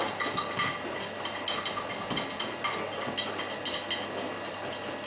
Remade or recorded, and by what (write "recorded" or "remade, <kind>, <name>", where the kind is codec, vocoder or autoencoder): recorded